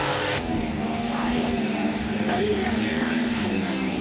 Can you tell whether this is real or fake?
fake